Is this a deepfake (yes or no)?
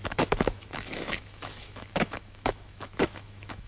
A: yes